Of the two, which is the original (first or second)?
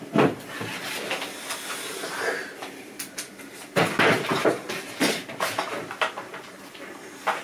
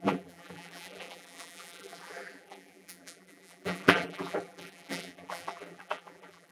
first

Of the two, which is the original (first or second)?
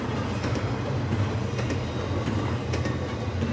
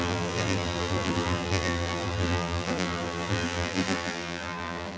first